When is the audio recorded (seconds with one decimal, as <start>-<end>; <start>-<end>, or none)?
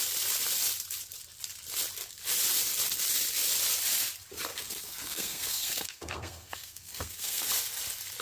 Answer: 0.0-4.5; 7.5-8.2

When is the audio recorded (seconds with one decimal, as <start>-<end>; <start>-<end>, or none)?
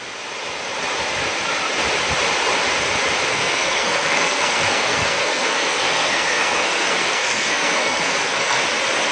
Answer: 0.0-3.3; 8.6-9.1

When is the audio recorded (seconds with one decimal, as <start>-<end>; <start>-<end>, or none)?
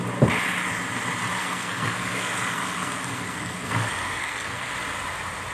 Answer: 0.0-1.4; 4.7-5.5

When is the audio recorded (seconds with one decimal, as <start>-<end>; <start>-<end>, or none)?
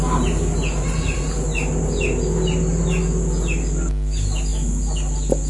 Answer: 0.0-5.5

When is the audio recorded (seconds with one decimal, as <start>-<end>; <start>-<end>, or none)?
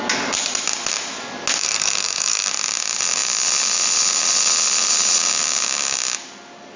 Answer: 0.0-1.6; 2.5-6.8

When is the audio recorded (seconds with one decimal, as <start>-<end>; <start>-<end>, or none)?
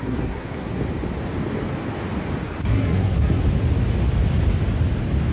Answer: 0.8-2.6; 3.4-5.3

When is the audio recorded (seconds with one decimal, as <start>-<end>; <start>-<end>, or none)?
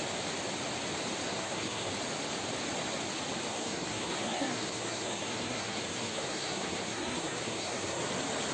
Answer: 0.0-1.3; 1.9-3.5; 8.0-8.5